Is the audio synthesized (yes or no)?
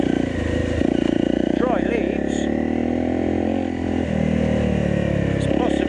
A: no